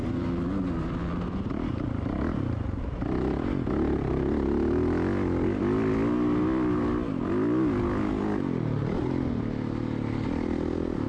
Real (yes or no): yes